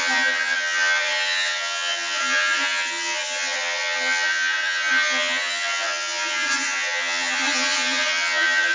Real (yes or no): no